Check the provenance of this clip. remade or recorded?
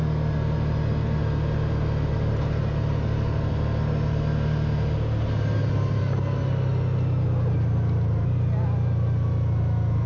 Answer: recorded